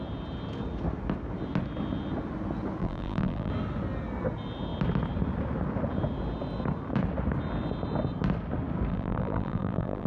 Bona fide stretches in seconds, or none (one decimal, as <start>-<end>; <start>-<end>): 0.0-2.8; 3.5-8.9